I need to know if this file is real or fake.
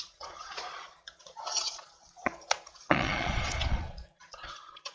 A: fake